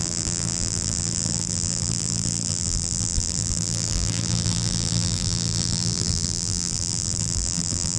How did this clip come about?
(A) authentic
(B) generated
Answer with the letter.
B